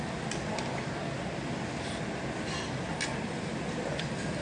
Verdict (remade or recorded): recorded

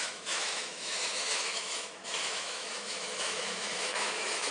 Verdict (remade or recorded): remade